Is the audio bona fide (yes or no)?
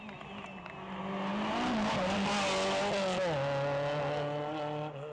yes